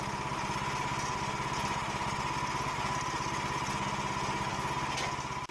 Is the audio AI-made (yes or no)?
no